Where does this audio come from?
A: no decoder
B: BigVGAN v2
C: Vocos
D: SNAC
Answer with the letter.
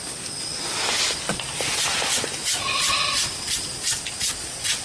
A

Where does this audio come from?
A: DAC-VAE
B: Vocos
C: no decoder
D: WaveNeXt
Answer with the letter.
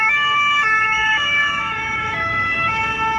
A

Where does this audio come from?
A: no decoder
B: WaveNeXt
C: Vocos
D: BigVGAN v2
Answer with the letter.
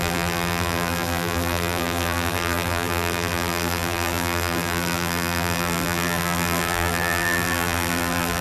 D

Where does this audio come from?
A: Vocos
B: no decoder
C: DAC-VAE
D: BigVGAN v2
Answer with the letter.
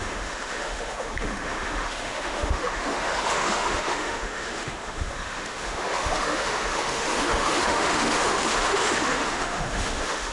C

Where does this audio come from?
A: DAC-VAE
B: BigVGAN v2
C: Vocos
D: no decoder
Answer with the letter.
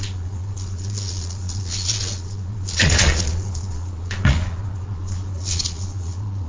C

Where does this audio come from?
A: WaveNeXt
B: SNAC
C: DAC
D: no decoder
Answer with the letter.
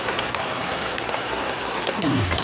B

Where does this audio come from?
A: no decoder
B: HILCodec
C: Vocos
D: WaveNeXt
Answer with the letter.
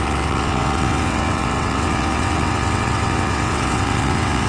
D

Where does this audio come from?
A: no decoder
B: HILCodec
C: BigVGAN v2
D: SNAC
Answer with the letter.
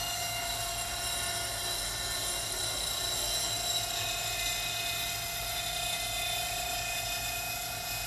A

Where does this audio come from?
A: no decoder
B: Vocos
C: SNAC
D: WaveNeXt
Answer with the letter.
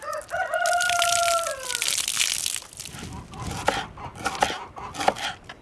A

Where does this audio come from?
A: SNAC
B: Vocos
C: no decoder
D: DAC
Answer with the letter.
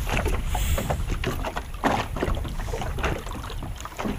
C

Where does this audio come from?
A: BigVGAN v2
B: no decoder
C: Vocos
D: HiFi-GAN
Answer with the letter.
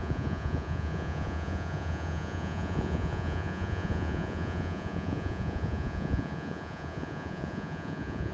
C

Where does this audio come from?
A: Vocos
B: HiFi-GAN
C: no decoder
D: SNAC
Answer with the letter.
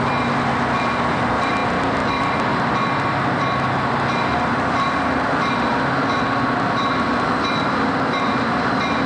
C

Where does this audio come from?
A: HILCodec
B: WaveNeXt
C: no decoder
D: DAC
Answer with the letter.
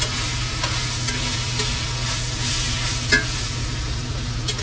C